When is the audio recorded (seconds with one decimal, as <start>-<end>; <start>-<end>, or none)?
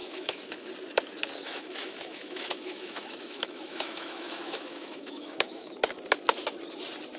0.7-1.4; 5.7-7.2